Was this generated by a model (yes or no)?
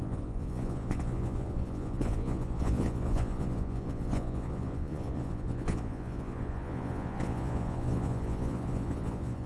yes